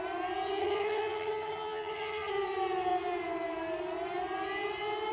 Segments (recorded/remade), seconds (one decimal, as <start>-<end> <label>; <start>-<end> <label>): 0.0-0.6 recorded; 0.6-2.3 remade; 2.3-5.1 recorded